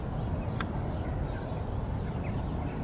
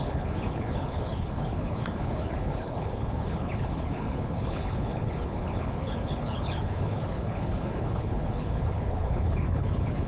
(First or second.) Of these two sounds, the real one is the first